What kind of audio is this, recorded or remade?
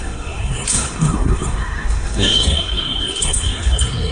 remade